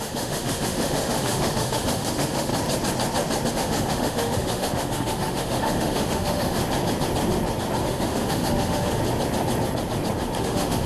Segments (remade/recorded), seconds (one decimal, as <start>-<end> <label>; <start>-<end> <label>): 0.0-2.5 remade; 2.5-3.5 recorded; 3.5-6.6 remade; 6.6-7.8 recorded; 7.8-9.0 remade; 9.0-10.4 recorded; 10.4-10.9 remade